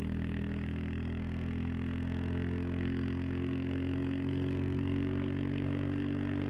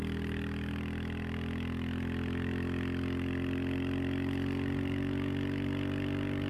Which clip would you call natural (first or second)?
second